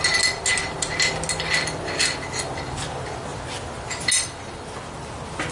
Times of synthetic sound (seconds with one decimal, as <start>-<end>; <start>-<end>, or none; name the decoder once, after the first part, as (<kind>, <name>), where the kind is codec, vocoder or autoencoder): none